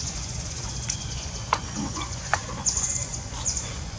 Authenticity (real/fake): fake